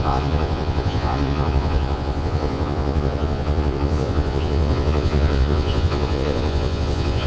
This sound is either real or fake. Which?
fake